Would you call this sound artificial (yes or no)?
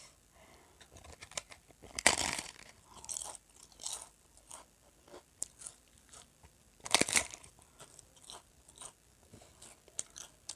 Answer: yes